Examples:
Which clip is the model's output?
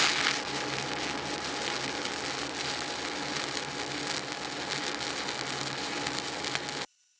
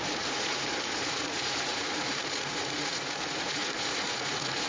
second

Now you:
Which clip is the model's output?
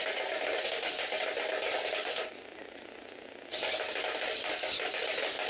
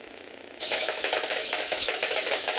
second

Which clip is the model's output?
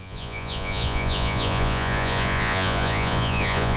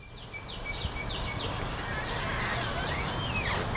first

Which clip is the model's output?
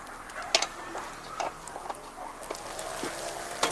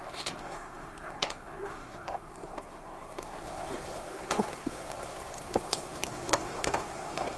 second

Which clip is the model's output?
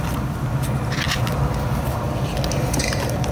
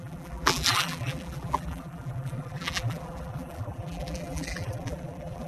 second